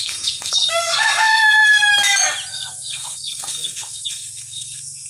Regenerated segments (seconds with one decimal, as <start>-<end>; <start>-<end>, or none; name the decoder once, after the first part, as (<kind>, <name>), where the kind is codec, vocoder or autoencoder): 0.0-1.9 (codec, SNAC); 2.5-5.1